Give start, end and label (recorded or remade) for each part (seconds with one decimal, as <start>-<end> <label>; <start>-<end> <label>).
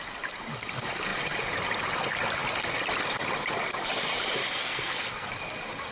0.0-4.4 recorded; 4.4-5.3 remade; 5.3-5.9 recorded